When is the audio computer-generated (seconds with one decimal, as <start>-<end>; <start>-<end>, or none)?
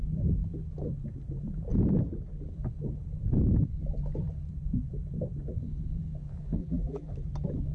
6.6-7.1